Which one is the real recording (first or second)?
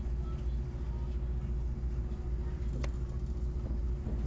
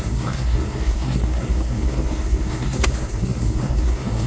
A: first